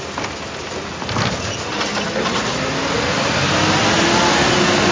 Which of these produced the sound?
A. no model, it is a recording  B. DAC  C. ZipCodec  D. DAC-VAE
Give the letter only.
A